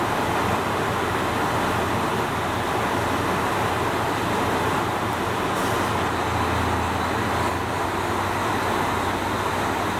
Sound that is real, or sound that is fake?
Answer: real